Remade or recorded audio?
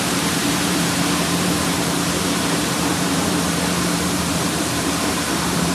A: remade